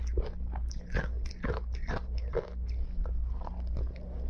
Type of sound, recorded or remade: recorded